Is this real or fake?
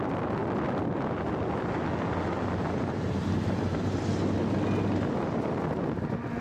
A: real